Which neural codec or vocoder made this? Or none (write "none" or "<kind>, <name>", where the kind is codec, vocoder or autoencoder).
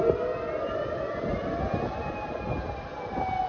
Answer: none